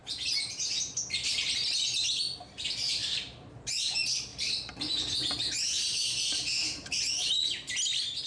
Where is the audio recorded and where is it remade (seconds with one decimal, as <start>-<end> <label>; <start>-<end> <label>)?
0.0-3.0 recorded; 3.0-3.8 remade; 3.8-4.3 recorded; 4.3-7.1 remade; 7.1-8.3 recorded